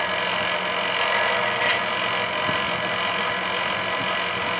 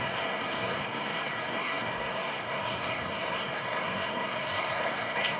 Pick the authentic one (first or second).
first